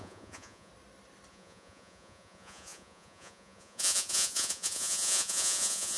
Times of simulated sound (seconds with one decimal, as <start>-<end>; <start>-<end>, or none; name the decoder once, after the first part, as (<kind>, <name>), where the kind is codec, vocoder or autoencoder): 0.0-0.7 (vocoder, Vocos); 1.3-6.0